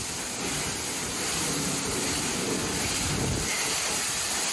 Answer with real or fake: real